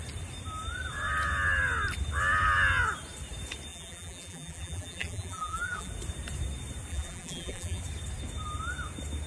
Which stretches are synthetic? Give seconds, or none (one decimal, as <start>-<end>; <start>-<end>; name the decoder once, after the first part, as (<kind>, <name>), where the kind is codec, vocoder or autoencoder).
3.7-5.9 (vocoder, BigVGAN v2); 6.9-7.8